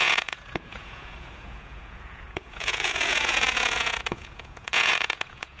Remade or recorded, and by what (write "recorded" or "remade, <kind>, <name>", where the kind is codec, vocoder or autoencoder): remade, vocoder, Vocos